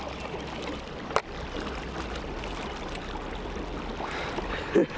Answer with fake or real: real